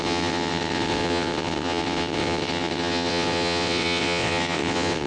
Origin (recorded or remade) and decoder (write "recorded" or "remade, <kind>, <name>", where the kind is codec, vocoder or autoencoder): remade, vocoder, WaveNeXt